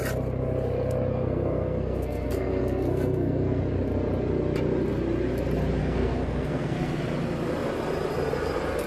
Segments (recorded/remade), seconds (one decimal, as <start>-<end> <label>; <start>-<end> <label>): 0.0-1.1 recorded; 1.1-3.6 remade; 3.6-5.8 recorded; 5.8-7.0 remade; 7.0-8.9 recorded